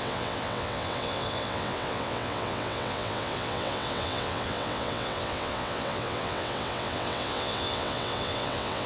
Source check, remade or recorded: remade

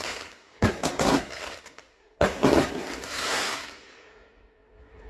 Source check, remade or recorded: remade